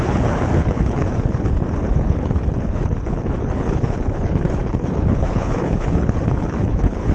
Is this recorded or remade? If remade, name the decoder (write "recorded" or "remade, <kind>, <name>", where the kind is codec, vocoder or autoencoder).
remade, codec, HILCodec